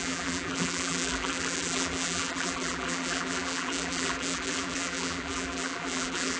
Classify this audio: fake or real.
fake